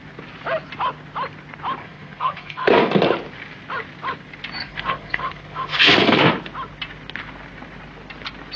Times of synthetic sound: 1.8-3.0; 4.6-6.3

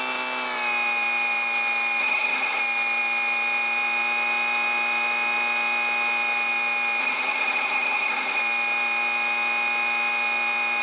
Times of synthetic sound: 2.0-2.6; 7.0-8.4

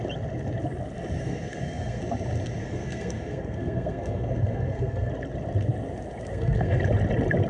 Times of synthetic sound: 1.2-2.0; 2.6-5.1; 6.3-6.8

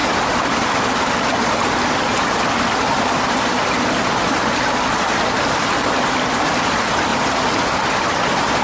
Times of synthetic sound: none

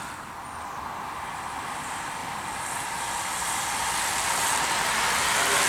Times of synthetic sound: none

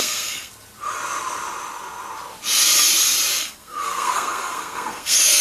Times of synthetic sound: 0.0-0.5; 3.4-5.4

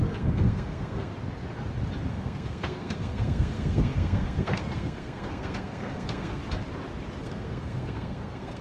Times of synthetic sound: 0.0-1.1; 2.1-6.4; 7.2-8.6

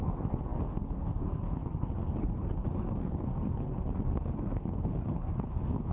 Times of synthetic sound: 0.0-5.9